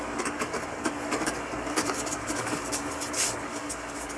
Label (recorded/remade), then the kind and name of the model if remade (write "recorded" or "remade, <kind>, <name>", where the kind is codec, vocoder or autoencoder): remade, codec, DAC